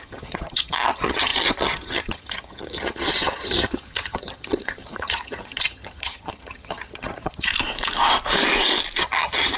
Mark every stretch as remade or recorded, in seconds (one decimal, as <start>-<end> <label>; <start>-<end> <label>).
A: 0.0-7.5 remade; 7.5-9.0 recorded; 9.0-9.6 remade